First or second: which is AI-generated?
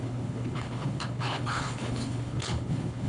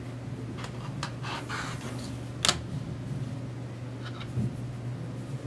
first